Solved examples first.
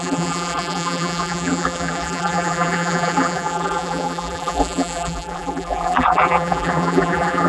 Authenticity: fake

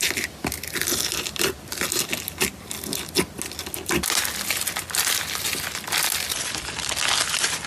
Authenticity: real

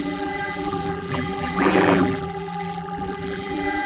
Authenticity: fake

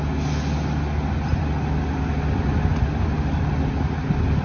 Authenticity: real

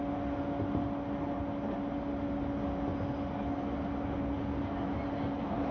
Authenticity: real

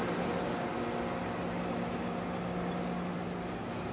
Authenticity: real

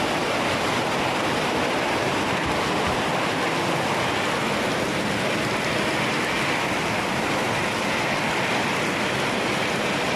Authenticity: real